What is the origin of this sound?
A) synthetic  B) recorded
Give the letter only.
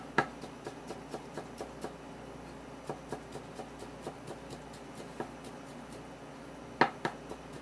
B